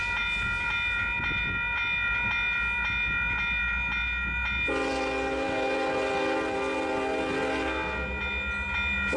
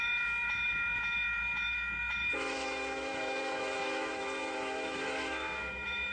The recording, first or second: first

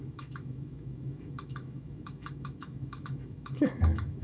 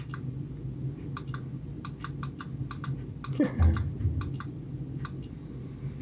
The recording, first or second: second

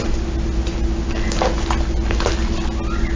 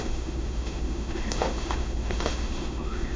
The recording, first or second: first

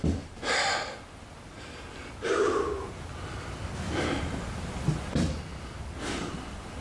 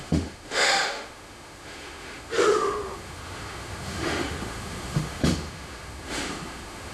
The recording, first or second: first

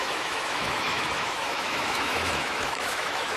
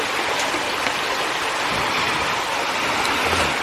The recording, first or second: second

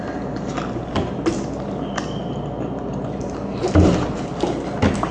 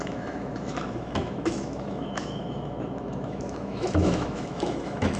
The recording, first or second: first